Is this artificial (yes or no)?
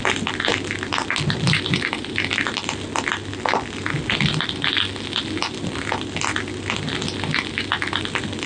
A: no